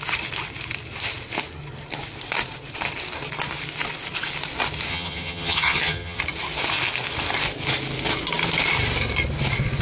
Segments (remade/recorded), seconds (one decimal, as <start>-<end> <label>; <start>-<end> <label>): 0.0-4.9 recorded; 4.9-6.2 remade; 6.2-9.8 recorded